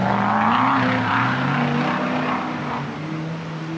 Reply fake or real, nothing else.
real